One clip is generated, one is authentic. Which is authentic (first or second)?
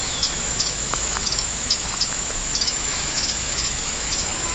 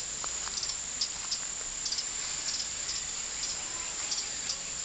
second